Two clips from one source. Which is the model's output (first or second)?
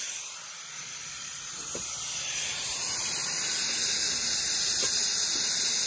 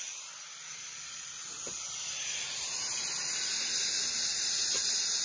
first